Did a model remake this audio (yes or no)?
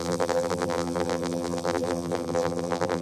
yes